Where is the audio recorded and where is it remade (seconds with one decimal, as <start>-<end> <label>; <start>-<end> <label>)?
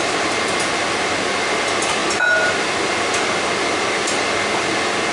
0.0-5.1 recorded